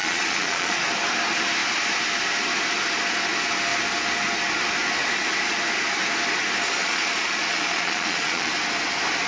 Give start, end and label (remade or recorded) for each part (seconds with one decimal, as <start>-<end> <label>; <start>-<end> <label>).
0.0-0.8 remade; 0.8-6.8 recorded; 6.8-8.5 remade; 8.5-9.3 recorded